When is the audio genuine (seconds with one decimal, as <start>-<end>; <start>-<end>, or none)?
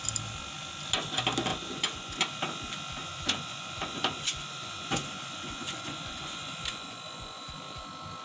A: 0.0-1.5; 2.3-3.0; 7.5-8.2